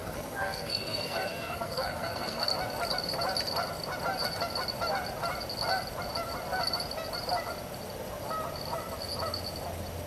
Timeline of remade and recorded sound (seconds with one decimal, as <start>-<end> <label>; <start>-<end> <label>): 0.0-2.5 remade; 2.5-10.1 recorded